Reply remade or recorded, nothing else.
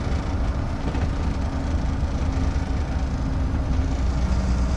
recorded